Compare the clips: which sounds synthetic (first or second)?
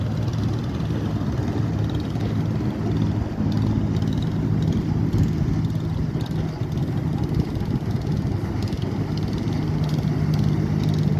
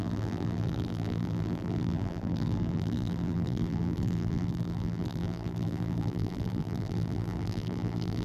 second